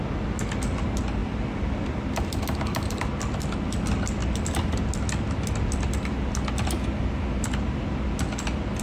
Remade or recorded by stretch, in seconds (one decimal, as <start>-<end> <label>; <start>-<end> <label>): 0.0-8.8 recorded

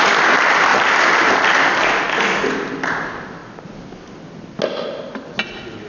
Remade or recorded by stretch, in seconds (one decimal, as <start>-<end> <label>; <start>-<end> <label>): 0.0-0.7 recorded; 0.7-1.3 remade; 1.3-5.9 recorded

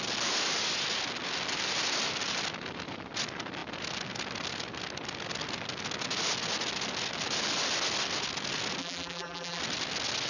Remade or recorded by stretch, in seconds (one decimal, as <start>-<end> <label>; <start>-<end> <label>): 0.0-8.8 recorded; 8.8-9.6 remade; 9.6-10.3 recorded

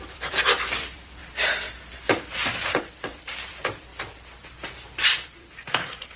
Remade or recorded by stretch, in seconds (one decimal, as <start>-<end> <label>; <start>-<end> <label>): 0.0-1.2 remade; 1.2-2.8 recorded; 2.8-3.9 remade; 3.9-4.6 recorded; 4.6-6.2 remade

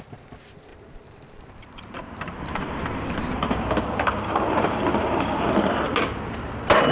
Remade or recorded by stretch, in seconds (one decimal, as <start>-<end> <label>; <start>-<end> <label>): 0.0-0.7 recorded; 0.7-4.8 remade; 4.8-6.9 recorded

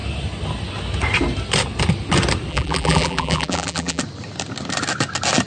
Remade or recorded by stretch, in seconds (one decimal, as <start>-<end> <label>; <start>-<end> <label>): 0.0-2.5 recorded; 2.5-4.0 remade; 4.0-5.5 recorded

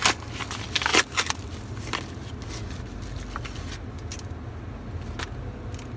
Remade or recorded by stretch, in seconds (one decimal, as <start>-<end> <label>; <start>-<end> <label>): 0.0-6.0 recorded